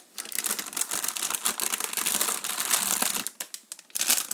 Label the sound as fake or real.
real